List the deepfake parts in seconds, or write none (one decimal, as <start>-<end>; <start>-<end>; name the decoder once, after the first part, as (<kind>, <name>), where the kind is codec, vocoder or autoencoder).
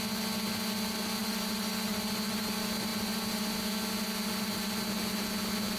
none